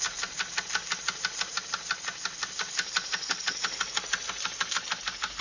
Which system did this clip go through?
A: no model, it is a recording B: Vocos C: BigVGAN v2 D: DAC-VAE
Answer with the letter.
A